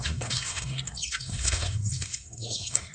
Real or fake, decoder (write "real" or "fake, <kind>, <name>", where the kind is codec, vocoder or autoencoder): fake, codec, SNAC